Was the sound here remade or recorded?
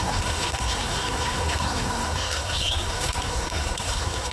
remade